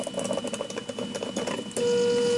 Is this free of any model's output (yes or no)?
yes